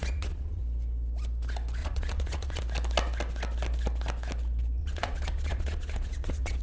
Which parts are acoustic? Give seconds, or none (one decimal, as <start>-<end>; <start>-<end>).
0.6-1.8; 2.6-4.8